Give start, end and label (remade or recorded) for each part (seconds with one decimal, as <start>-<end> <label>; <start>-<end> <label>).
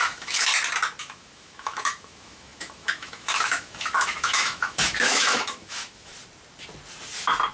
0.0-0.5 remade; 0.5-1.0 recorded; 1.0-6.1 remade; 6.1-7.5 recorded